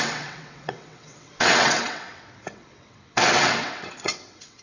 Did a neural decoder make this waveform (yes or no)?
yes